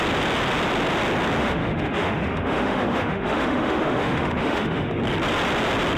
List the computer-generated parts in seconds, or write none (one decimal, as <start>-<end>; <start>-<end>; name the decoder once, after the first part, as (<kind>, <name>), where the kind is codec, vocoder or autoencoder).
1.4-5.0 (autoencoder, DAC-VAE)